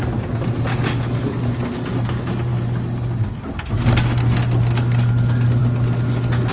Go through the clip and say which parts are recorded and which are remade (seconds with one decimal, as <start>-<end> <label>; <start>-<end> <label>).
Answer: 0.0-6.5 recorded